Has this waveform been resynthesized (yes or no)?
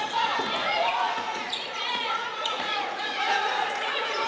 yes